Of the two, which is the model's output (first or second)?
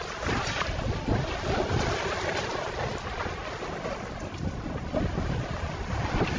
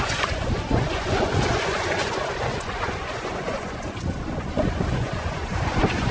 second